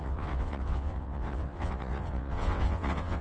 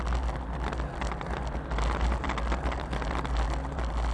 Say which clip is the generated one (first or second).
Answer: first